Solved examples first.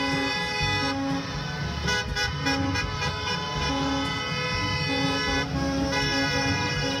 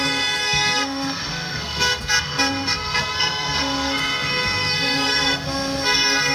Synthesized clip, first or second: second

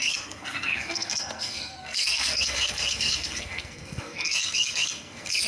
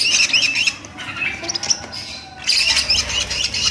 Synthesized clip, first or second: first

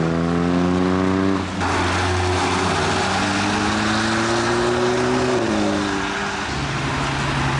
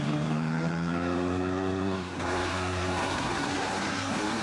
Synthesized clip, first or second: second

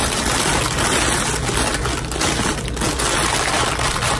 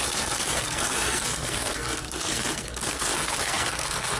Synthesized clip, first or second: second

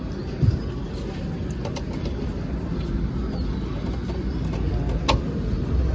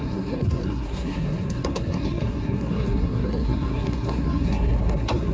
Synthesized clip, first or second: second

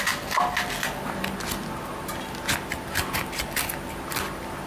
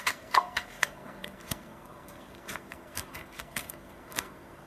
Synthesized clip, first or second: second